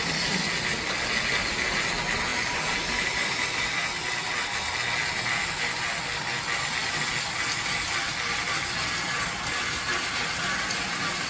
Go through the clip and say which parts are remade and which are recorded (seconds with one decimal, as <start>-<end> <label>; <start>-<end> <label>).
0.0-11.3 recorded